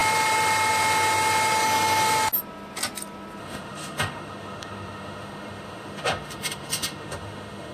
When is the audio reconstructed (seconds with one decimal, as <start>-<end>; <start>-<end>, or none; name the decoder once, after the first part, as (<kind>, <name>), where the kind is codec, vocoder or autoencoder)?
3.4-7.7 (autoencoder, DAC-VAE)